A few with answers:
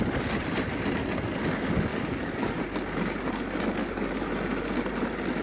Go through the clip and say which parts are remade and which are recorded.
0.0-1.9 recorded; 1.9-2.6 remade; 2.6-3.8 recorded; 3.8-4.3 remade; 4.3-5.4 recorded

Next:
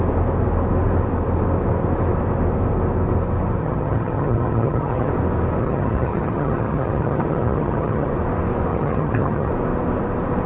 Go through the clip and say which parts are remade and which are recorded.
0.0-3.6 recorded; 3.6-5.1 remade; 5.1-5.6 recorded; 5.6-8.1 remade; 8.1-8.7 recorded; 8.7-9.5 remade; 9.5-10.5 recorded

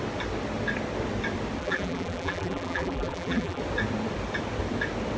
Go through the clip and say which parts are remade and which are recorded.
0.0-1.6 recorded; 1.6-3.6 remade; 3.6-5.2 recorded

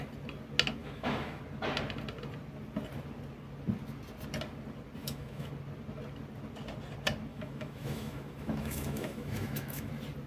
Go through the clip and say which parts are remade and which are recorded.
0.0-0.8 recorded; 0.8-1.4 remade; 1.4-5.0 recorded; 5.0-5.5 remade; 5.5-7.3 recorded; 7.3-9.9 remade; 9.9-10.3 recorded

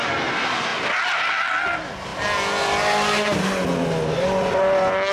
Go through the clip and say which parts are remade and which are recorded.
0.0-5.1 recorded

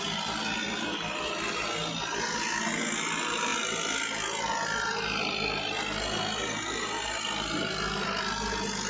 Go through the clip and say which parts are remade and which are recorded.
0.0-8.9 recorded

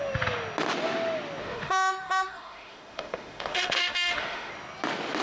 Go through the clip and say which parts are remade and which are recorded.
0.0-1.4 recorded; 1.4-4.5 remade; 4.5-5.2 recorded